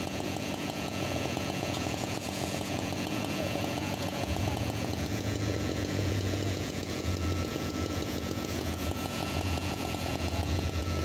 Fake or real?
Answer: fake